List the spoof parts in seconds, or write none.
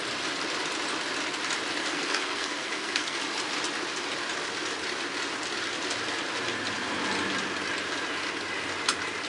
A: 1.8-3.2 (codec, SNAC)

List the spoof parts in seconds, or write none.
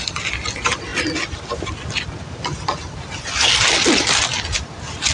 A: none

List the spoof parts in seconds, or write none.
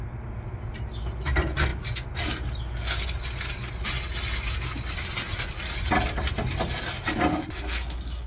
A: 7.3-8.3 (codec, SNAC)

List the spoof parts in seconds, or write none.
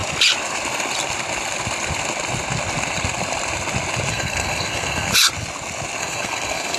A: 4.1-5.1 (codec, SNAC); 6.0-6.8